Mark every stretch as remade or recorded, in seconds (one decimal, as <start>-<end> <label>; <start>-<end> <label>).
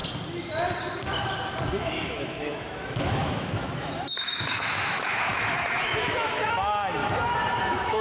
0.0-1.8 recorded; 1.8-7.0 remade; 7.0-7.6 recorded; 7.6-8.0 remade